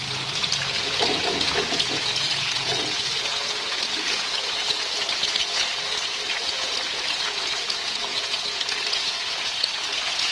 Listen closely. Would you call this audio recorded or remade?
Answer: remade